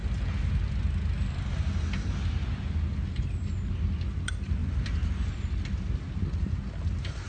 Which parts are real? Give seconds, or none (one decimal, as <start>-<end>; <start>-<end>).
0.0-4.6; 6.2-7.3